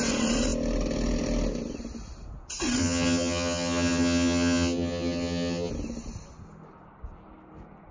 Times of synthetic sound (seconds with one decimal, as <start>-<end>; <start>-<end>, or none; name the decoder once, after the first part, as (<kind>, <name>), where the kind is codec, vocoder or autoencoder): 2.8-5.7 (vocoder, HiFi-GAN)

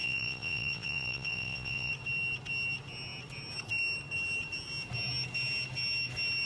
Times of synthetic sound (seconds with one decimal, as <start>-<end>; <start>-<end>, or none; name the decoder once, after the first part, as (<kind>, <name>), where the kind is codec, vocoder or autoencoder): 0.0-1.9 (vocoder, Vocos)

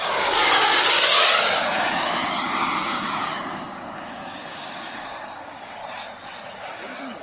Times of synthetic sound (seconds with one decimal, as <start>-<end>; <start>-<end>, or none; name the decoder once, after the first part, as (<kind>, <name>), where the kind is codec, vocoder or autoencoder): 0.0-5.8 (codec, DAC); 6.6-7.2

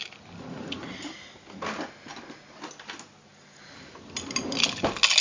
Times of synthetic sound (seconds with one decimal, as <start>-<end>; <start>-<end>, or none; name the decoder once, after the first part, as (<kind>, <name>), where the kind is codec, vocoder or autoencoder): none

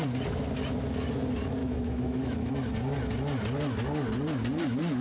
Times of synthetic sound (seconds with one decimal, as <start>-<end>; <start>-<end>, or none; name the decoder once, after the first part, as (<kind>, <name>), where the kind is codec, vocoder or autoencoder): 1.6-2.5 (autoencoder, DAC-VAE)

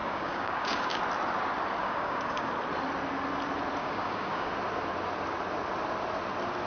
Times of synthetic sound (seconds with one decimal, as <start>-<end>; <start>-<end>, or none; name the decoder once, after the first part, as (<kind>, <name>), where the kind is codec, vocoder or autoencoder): 0.0-1.0 (codec, DAC); 1.8-2.5; 3.8-4.5

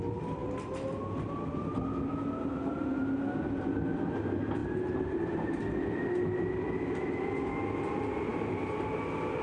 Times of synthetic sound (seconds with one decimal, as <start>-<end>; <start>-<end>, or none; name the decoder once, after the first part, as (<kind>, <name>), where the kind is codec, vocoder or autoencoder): 4.6-5.6 (vocoder, BigVGAN v2); 8.3-9.0